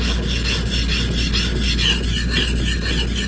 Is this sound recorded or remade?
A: recorded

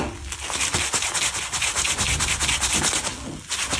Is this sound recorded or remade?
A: recorded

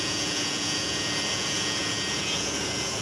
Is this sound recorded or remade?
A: remade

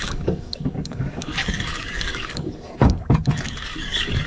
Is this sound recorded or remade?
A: remade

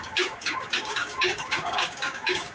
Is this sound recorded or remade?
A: remade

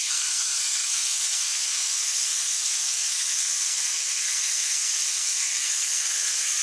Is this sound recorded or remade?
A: remade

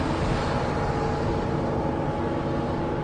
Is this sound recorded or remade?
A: recorded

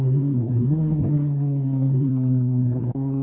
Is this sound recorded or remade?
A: remade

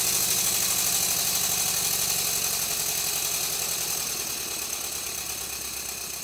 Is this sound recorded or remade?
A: recorded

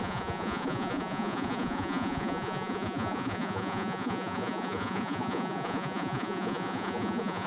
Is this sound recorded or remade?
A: remade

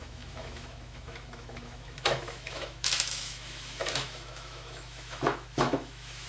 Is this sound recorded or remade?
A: remade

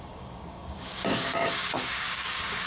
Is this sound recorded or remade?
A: remade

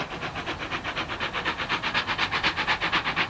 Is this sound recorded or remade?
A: recorded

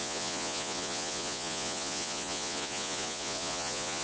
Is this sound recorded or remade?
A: remade